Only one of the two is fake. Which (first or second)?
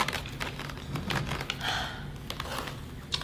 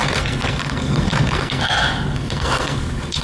second